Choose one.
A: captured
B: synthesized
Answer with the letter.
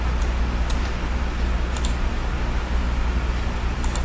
A